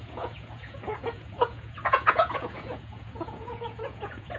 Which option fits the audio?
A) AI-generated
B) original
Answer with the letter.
A